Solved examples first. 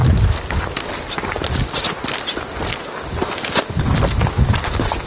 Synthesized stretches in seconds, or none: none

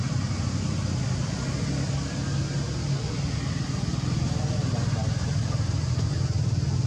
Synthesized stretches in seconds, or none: 3.9-4.4

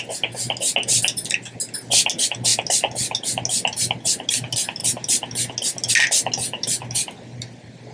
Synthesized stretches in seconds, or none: none

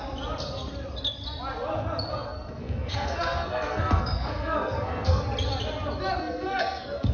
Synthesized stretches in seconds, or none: 2.1-5.2; 6.2-7.1

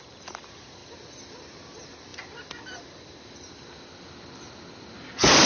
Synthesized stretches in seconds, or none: none